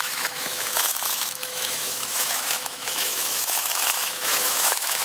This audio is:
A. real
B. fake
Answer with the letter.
B